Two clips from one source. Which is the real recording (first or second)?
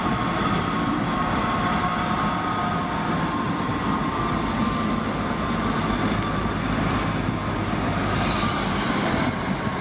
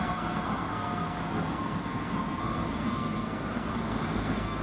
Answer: first